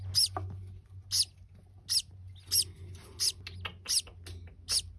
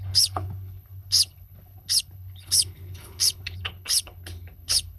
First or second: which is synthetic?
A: second